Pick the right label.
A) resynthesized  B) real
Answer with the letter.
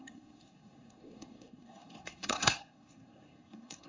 A